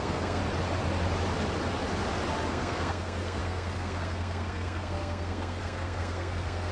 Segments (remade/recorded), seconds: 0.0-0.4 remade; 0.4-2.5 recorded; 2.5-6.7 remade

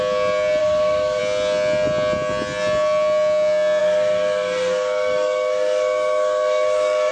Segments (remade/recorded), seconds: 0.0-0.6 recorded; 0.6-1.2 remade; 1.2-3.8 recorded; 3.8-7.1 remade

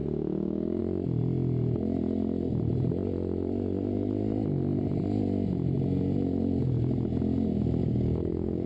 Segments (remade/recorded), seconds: 0.0-0.8 remade; 0.8-7.8 recorded; 7.8-8.7 remade